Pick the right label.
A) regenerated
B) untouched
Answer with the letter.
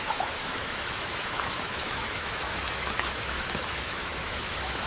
A